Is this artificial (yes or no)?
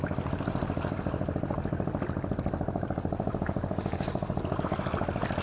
no